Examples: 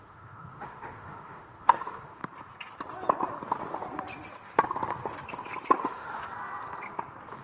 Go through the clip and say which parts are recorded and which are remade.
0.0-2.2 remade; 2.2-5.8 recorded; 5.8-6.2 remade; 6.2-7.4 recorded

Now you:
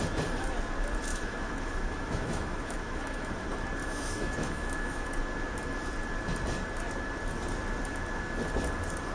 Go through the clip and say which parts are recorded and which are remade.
0.0-1.1 recorded; 1.1-3.4 remade; 3.4-3.8 recorded; 3.8-5.2 remade; 5.2-9.1 recorded